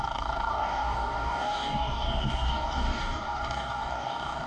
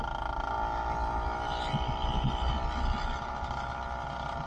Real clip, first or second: second